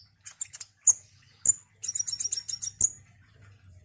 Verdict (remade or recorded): recorded